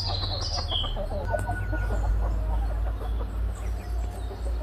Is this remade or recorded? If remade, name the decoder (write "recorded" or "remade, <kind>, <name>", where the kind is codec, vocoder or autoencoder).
recorded